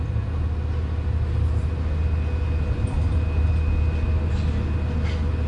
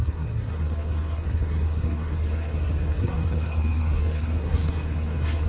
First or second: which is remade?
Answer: second